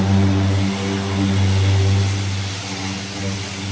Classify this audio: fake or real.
real